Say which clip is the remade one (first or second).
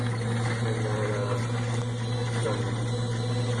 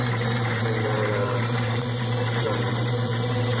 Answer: second